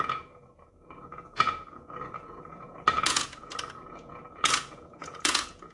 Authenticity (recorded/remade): remade